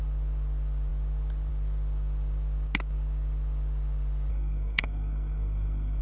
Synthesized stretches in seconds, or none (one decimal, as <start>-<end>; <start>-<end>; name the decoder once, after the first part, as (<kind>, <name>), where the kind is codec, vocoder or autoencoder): 4.3-6.0 (codec, SNAC)